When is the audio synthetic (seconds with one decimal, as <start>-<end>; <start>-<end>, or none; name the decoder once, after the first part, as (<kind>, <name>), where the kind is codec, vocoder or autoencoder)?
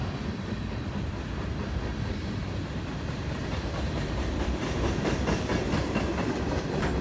0.0-7.0 (vocoder, BigVGAN v2)